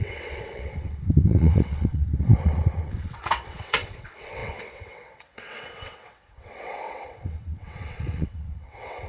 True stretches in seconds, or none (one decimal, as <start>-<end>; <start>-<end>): none